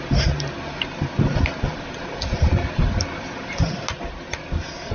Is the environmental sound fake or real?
real